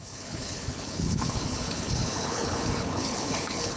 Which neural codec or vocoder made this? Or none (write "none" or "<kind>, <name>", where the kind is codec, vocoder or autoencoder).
codec, HILCodec